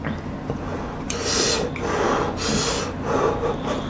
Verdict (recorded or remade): recorded